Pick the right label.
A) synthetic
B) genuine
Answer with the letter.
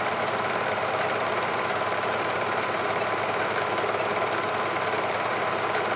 A